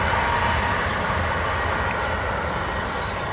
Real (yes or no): yes